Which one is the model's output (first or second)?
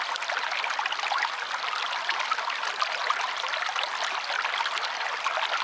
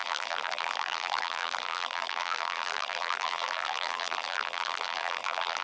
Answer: second